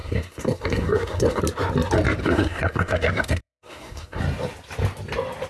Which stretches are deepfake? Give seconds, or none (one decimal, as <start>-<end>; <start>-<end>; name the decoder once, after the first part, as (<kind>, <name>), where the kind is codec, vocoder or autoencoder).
0.0-1.4 (codec, SNAC); 2.2-4.2